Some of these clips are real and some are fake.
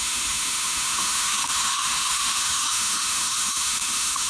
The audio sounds fake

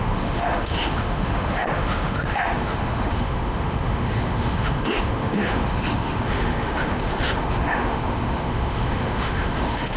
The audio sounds fake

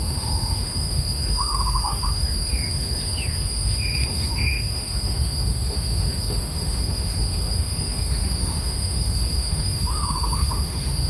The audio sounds fake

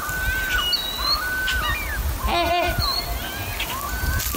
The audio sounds real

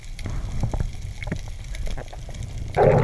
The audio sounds real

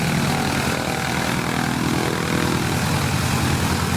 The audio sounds real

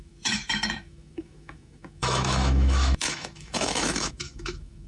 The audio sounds fake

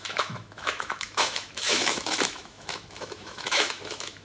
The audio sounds fake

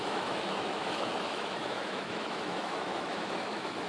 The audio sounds fake